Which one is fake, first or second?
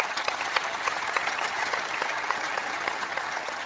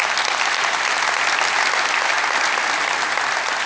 first